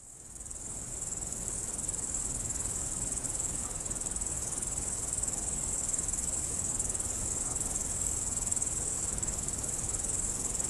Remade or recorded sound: remade